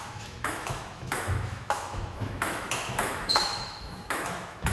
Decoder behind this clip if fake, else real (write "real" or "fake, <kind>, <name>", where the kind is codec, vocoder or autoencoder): fake, autoencoder, DAC-VAE